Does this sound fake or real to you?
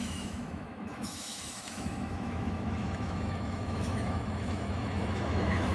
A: fake